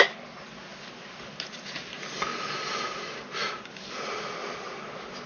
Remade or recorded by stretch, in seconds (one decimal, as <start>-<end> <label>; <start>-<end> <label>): 0.0-2.3 recorded; 2.3-3.6 remade; 3.6-5.3 recorded